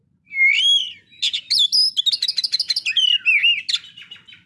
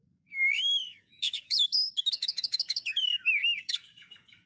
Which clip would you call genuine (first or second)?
first